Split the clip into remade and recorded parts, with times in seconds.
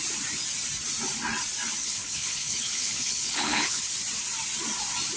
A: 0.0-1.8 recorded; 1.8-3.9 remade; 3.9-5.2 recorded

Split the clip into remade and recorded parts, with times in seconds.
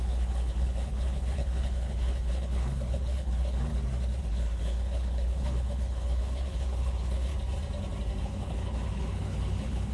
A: 0.0-3.7 remade; 3.7-4.2 recorded; 4.2-7.3 remade; 7.3-8.2 recorded; 8.2-9.9 remade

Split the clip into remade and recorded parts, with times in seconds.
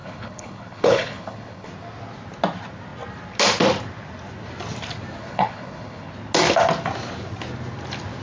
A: 0.0-1.7 remade; 1.7-5.2 recorded; 5.2-6.1 remade; 6.1-8.2 recorded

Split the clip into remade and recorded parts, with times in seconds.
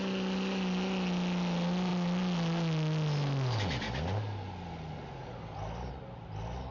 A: 0.0-6.7 recorded